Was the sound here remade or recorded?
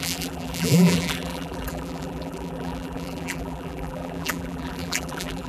remade